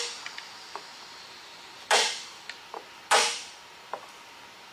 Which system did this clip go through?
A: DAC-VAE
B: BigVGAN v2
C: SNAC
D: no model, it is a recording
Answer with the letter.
B